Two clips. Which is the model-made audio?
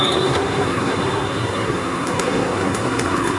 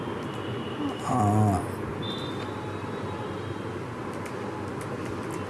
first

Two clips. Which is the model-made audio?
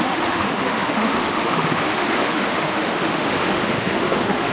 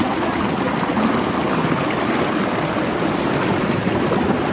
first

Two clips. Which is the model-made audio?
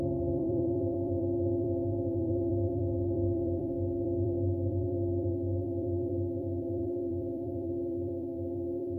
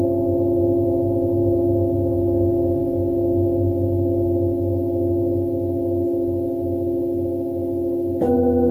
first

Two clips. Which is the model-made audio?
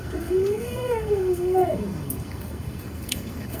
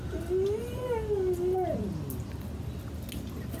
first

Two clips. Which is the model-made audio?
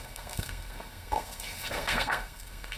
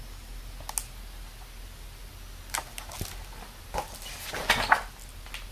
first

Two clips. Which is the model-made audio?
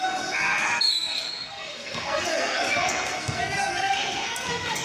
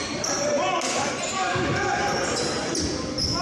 first